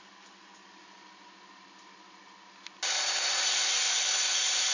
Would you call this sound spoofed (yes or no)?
no